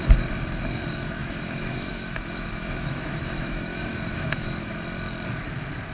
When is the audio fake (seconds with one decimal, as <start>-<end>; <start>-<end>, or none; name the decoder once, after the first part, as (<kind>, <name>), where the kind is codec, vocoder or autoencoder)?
1.2-4.7 (autoencoder, DAC-VAE)